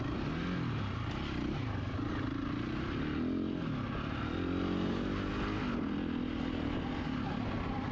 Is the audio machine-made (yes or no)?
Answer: no